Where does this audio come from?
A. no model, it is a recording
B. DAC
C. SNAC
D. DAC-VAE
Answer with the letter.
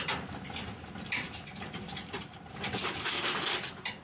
A